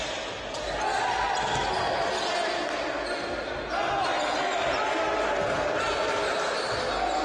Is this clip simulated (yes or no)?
no